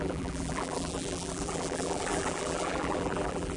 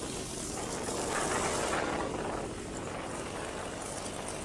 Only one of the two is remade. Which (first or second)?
first